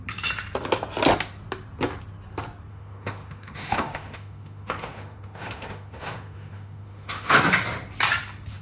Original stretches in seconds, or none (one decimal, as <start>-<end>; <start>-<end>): 0.0-2.7; 7.4-8.6